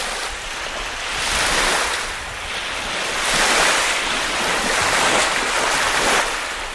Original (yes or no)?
yes